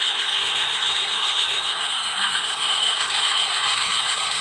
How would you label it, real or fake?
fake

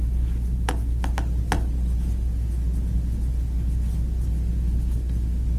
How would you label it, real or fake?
real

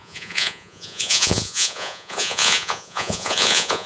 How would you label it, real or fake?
fake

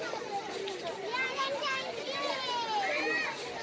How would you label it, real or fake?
real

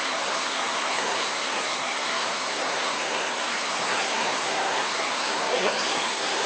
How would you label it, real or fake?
fake